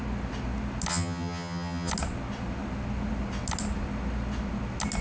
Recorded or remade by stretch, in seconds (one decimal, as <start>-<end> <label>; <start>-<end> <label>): 0.0-0.9 recorded; 0.9-1.9 remade; 1.9-5.0 recorded